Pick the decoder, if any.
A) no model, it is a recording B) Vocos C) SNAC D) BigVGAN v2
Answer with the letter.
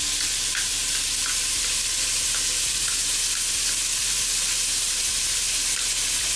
A